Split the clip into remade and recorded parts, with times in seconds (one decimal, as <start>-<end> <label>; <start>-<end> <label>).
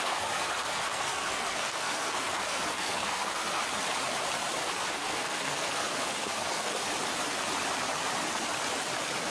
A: 0.0-3.6 remade; 3.6-4.7 recorded; 4.7-6.9 remade; 6.9-9.3 recorded